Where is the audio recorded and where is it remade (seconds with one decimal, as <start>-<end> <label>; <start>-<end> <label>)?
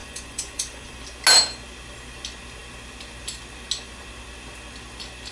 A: 0.0-1.0 remade; 1.0-5.3 recorded